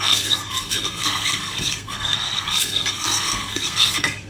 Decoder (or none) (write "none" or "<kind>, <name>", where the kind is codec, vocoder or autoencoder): codec, SNAC